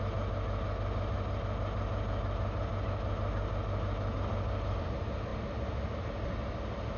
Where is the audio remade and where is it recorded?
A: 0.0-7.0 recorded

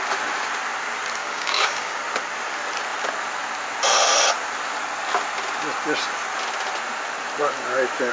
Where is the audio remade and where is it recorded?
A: 0.0-1.2 recorded; 1.2-2.0 remade; 2.0-8.1 recorded

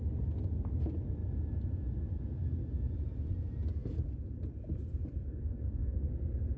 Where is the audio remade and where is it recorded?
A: 0.0-5.3 recorded; 5.3-6.1 remade; 6.1-6.6 recorded

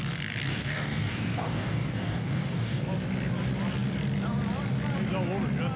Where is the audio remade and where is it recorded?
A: 0.0-0.5 recorded; 0.5-2.8 remade; 2.8-5.8 recorded

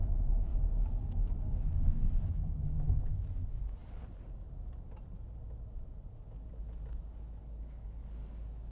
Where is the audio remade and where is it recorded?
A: 0.0-0.5 recorded; 0.5-3.0 remade; 3.0-7.4 recorded; 7.4-8.7 remade